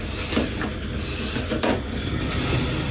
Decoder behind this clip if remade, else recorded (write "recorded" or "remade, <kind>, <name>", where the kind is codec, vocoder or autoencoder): recorded